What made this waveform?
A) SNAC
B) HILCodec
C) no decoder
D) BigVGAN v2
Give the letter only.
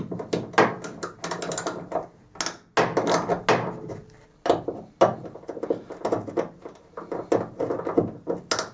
C